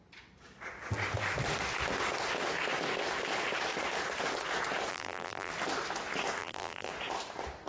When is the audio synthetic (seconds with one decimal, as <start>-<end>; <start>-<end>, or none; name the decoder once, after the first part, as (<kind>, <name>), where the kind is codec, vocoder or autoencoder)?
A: 4.9-5.5 (vocoder, BigVGAN v2); 6.4-6.9